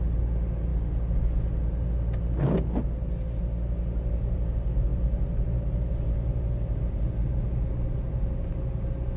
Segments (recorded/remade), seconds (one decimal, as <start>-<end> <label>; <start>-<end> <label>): 0.0-9.2 recorded